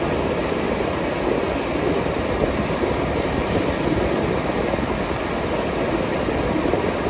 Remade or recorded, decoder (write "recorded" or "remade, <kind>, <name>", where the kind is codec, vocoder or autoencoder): recorded